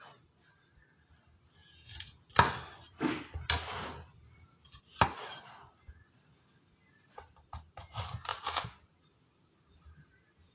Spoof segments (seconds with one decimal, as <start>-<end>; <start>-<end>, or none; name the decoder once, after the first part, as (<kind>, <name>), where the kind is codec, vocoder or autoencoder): 1.6-2.3 (vocoder, Vocos); 8.3-8.8